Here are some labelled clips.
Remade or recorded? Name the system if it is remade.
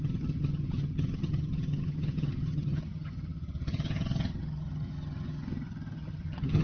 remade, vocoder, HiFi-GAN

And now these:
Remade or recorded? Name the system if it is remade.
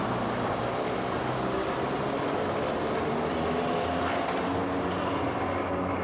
recorded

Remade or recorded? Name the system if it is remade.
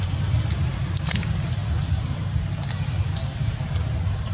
recorded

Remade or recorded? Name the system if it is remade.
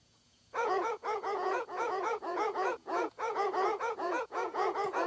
remade, vocoder, Vocos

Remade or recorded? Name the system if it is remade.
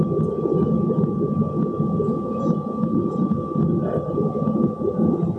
recorded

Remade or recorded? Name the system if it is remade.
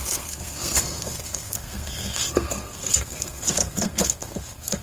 remade, codec, SNAC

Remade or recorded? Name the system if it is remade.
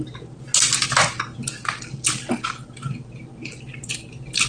recorded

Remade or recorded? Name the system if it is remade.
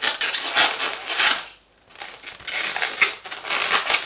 recorded